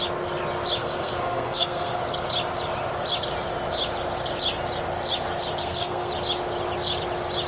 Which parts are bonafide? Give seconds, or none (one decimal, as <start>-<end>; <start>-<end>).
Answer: 0.0-0.8; 2.0-5.6; 6.1-7.5

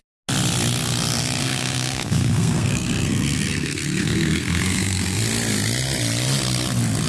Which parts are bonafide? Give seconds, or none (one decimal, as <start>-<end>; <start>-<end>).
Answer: 0.0-1.4; 5.2-7.1

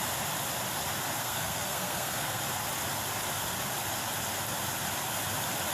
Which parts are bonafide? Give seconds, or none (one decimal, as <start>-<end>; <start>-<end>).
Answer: 0.0-1.2; 2.4-5.7

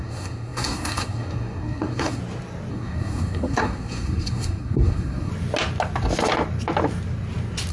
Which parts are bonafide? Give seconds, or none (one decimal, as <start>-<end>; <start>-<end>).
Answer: 2.2-2.7; 5.3-7.7

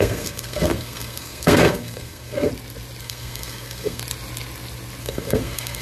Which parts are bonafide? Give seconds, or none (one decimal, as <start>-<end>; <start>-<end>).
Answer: 2.5-3.0; 4.0-5.0

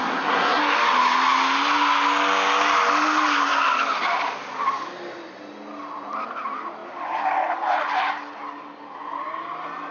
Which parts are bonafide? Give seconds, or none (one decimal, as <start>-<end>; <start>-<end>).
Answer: 0.6-9.9

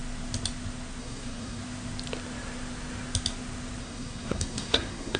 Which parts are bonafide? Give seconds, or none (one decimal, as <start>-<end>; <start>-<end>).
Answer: 0.0-1.0; 1.6-3.8